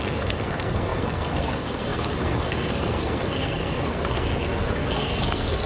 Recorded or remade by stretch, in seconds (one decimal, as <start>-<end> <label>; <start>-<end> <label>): 0.0-5.7 remade